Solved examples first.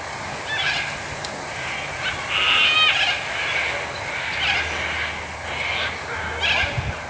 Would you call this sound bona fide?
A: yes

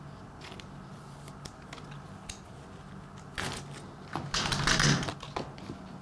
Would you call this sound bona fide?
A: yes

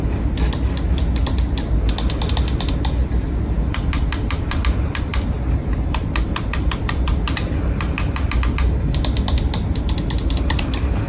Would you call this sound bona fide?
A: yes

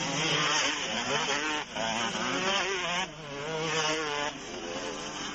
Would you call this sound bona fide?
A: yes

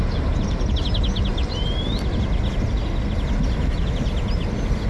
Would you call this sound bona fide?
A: yes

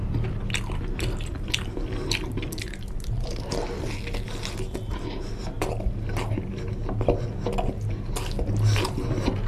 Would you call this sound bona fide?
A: yes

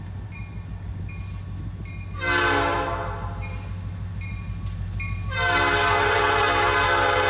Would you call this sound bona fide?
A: yes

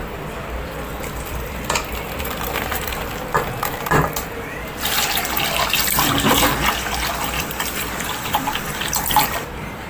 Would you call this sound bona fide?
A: no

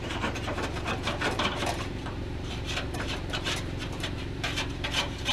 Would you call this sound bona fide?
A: no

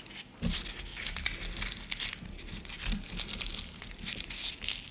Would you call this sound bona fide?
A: yes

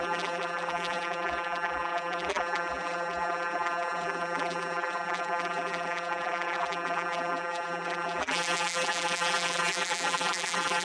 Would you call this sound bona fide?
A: no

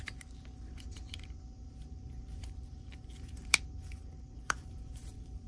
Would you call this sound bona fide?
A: no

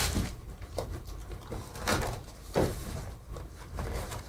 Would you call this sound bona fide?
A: no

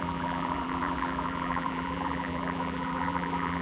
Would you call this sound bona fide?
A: no